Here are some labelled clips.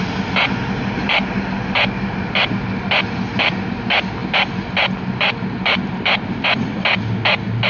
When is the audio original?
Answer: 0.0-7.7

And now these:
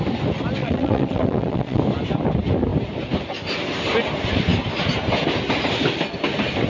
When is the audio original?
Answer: 0.0-0.6; 1.8-6.7

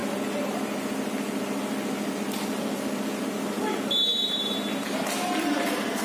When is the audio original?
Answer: 0.0-6.0

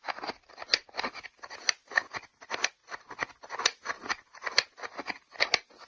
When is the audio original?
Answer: 0.0-5.9

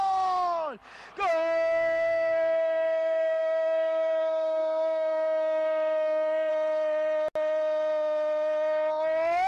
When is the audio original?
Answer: 0.0-1.3; 6.5-9.5